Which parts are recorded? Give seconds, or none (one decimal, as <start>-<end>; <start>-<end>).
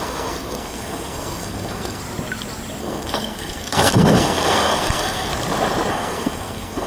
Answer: 2.0-2.8; 5.3-5.9